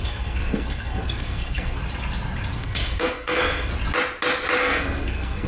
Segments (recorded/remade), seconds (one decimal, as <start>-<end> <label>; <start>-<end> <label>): 0.0-1.8 remade; 1.8-2.5 recorded; 2.5-3.7 remade; 3.7-4.6 recorded; 4.6-5.5 remade